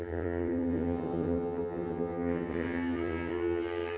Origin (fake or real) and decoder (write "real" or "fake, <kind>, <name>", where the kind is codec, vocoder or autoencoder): fake, vocoder, HiFi-GAN